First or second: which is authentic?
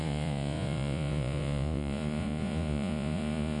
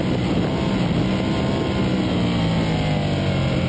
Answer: second